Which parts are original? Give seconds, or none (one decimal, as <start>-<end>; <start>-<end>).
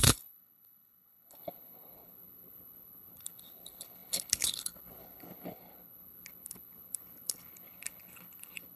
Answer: none